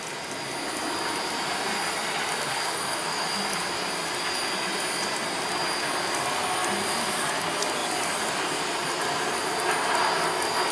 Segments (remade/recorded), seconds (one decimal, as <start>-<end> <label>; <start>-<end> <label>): 0.0-2.5 recorded; 2.5-3.3 remade; 3.3-10.7 recorded